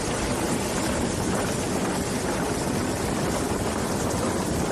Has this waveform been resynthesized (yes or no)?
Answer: no